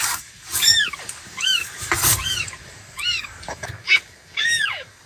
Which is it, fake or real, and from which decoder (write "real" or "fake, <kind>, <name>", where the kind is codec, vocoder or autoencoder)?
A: fake, codec, DAC